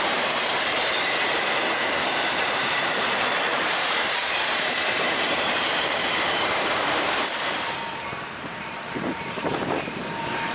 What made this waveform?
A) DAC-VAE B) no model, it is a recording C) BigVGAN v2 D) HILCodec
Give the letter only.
C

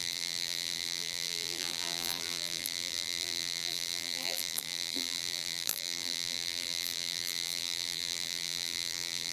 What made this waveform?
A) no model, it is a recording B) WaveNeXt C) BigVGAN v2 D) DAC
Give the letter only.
C